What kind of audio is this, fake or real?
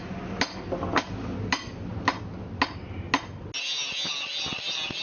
real